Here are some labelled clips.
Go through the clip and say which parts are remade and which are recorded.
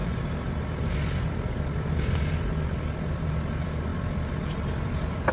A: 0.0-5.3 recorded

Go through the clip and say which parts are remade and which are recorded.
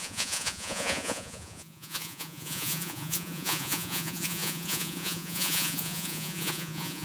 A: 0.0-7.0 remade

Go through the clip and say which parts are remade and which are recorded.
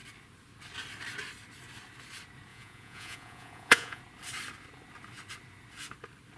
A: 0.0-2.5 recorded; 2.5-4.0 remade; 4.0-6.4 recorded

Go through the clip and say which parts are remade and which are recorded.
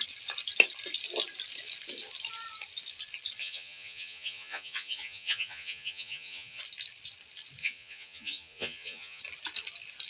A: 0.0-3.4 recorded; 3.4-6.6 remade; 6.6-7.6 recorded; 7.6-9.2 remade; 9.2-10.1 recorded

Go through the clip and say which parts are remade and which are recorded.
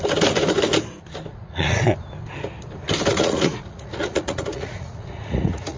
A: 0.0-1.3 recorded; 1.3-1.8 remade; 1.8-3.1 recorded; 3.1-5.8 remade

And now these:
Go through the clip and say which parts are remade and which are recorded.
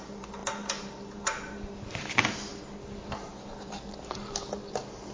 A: 0.0-5.1 recorded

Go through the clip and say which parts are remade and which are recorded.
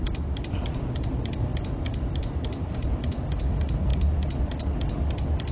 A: 0.0-5.5 recorded